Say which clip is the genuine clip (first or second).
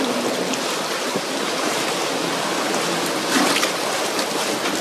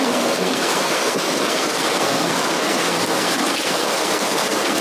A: first